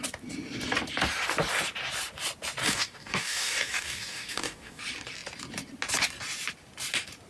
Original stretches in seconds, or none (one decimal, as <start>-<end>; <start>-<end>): 0.0-2.6; 4.8-7.3